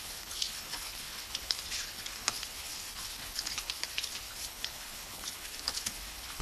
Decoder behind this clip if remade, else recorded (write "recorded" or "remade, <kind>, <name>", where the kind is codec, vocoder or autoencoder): remade, codec, HILCodec